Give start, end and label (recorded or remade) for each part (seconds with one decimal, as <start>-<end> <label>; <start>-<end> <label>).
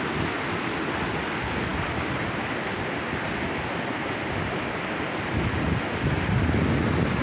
0.0-7.2 recorded